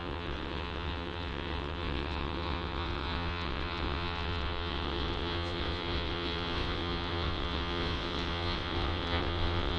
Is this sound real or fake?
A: fake